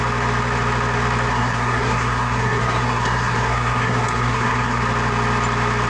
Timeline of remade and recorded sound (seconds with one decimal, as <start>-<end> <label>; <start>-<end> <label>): 0.0-1.3 recorded; 1.3-4.8 remade; 4.8-5.9 recorded